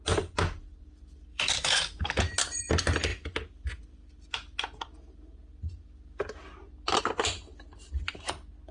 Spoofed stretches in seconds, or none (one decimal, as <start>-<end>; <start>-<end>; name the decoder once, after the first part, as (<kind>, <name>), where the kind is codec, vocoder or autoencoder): 1.3-2.2 (autoencoder, DAC-VAE)